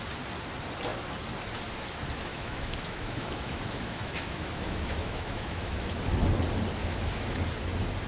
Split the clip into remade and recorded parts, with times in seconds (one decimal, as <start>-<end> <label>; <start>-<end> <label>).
0.0-2.3 recorded; 2.3-6.0 remade; 6.0-6.8 recorded; 6.8-7.4 remade; 7.4-8.1 recorded